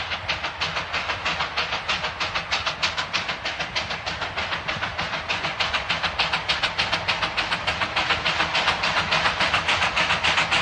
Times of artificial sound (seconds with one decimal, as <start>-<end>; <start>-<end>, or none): 5.3-5.9